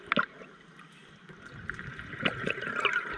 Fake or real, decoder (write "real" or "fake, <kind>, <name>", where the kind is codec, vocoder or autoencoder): real